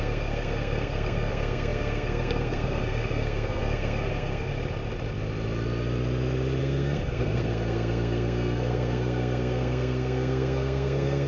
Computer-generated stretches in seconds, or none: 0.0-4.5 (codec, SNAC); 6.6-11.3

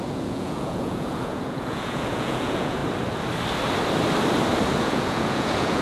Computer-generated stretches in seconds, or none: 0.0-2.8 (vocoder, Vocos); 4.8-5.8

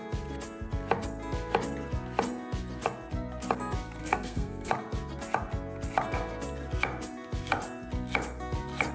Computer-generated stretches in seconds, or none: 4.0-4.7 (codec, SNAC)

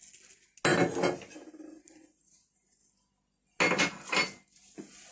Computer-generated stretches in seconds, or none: none